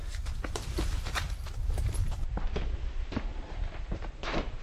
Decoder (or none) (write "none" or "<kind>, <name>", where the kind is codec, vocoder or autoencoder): vocoder, BigVGAN v2